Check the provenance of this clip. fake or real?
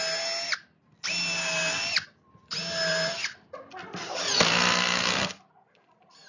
real